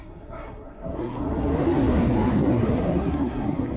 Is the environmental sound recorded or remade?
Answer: remade